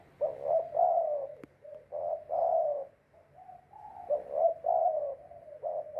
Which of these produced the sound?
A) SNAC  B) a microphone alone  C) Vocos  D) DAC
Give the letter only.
B